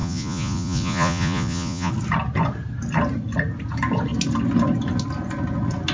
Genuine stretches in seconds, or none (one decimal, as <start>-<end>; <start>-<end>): 1.9-5.9

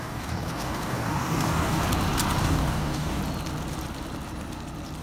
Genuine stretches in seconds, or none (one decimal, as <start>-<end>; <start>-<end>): 1.8-2.4; 3.2-5.0